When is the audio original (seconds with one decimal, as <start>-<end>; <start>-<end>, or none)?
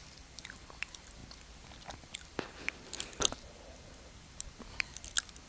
0.0-5.5